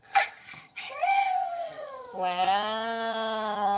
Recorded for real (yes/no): no